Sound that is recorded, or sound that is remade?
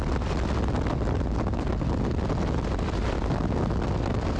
recorded